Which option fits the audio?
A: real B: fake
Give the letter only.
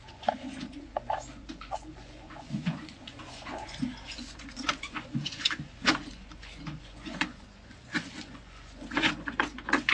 B